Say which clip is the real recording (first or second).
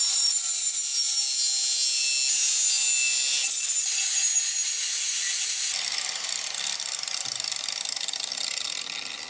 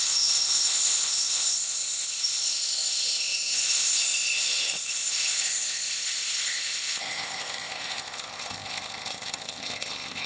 first